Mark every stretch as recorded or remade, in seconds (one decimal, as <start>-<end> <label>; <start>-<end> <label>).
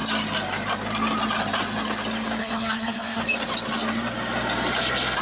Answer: 0.0-2.4 recorded; 2.4-3.2 remade; 3.2-5.2 recorded